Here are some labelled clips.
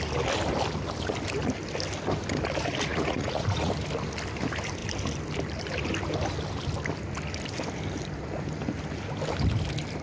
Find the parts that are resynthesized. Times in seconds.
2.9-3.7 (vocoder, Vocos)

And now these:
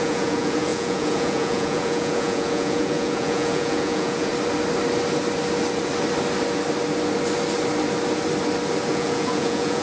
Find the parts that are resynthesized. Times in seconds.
0.0-4.3 (vocoder, Vocos); 8.9-9.8

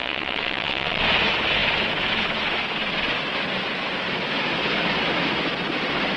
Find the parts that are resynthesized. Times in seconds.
0.0-1.0 (vocoder, Vocos)